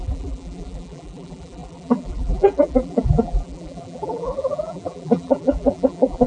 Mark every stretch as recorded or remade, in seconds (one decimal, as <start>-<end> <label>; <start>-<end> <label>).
0.0-6.3 remade